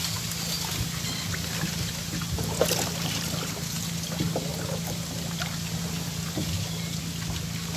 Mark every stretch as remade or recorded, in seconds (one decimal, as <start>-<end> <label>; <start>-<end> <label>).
0.0-7.8 recorded